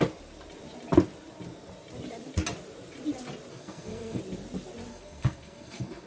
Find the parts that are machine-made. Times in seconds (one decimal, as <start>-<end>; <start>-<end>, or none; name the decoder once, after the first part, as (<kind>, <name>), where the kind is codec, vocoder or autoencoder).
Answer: 3.5-4.2 (codec, SNAC); 4.9-6.1